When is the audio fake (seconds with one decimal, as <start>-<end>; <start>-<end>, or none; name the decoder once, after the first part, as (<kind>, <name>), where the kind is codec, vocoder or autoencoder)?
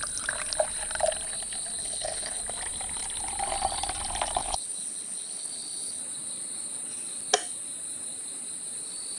1.8-2.4 (codec, HILCodec); 4.4-6.0